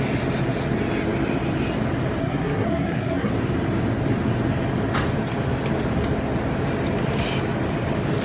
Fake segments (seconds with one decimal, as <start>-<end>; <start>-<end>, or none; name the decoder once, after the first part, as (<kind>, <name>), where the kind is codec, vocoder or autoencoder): 2.2-3.3 (codec, SNAC)